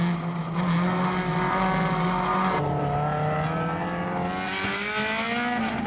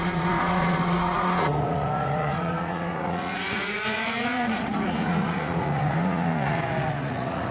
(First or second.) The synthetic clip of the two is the second